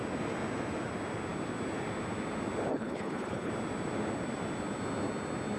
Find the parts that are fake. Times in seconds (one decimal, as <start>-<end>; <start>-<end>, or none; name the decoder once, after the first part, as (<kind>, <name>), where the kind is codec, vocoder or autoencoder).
2.7-3.5 (codec, HILCodec)